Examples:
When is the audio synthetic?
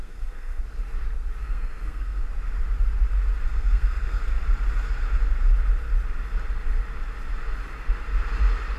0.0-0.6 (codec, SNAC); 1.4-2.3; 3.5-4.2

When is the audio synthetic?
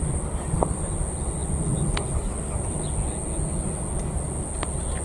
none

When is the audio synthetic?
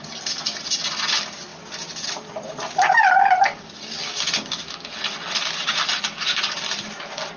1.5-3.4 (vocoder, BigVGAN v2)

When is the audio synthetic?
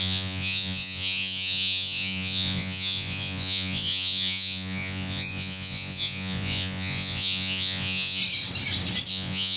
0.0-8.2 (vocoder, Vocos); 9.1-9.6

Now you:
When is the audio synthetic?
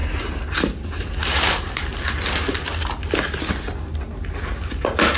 none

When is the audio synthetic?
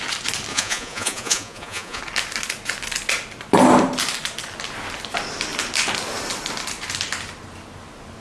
0.5-2.0 (vocoder, Vocos)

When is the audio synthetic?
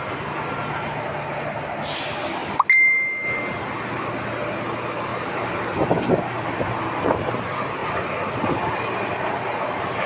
5.1-6.7 (vocoder, BigVGAN v2)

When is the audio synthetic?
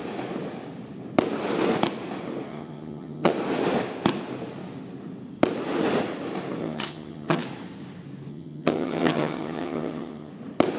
2.5-3.3 (vocoder, HiFi-GAN); 6.6-7.4; 8.3-10.3